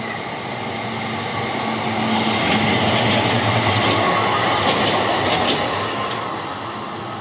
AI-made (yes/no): no